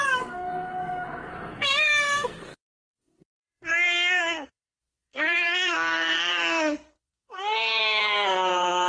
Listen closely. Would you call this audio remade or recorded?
remade